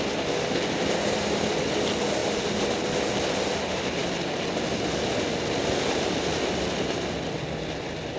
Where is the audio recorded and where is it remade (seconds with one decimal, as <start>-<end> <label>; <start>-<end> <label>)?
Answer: 0.0-8.2 recorded